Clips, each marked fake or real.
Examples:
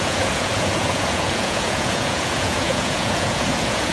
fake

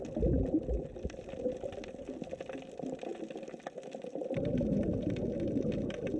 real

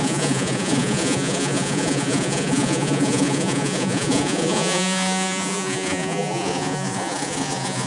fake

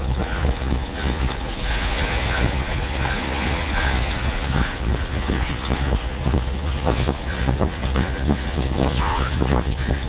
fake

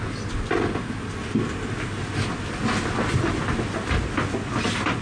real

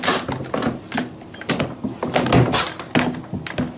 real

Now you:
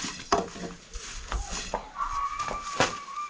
real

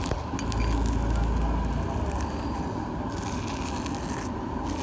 real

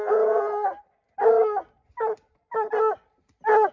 real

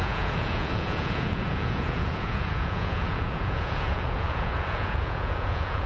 fake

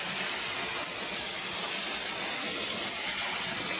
real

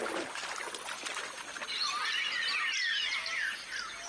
real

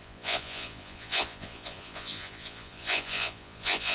fake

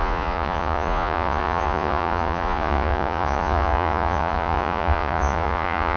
fake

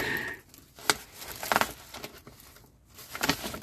real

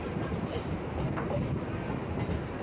real